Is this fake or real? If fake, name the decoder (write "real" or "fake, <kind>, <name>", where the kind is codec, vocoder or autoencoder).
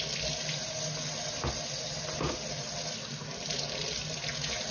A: real